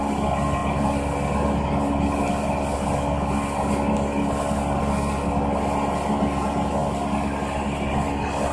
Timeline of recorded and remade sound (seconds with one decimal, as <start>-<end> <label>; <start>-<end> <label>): 0.0-8.5 recorded